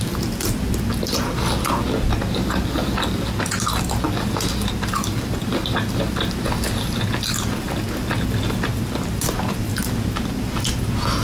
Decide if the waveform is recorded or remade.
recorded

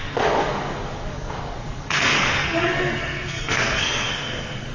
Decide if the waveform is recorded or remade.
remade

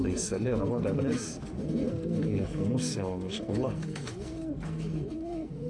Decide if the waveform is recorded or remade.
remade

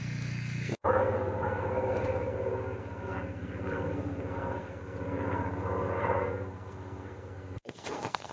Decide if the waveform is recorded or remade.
remade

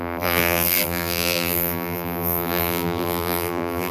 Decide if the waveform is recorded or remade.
remade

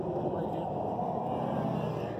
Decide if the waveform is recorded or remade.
recorded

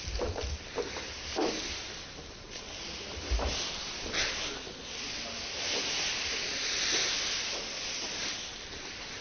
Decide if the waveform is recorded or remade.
recorded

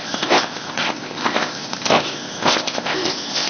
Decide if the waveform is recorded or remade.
remade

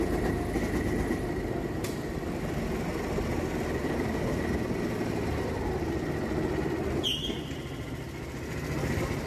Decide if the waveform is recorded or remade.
recorded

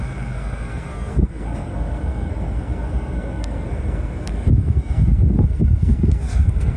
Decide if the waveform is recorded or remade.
remade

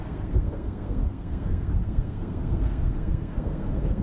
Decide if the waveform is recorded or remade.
remade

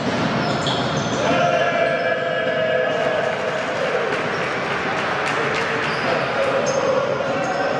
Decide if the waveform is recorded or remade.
recorded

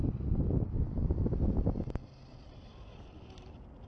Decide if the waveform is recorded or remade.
recorded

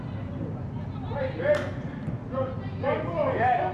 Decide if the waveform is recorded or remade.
recorded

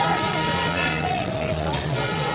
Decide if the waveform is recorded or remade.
remade